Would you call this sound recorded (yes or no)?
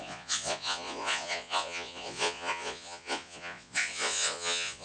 no